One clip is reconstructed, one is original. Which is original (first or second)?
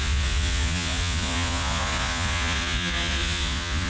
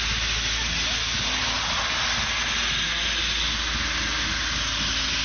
second